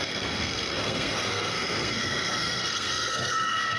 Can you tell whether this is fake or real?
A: fake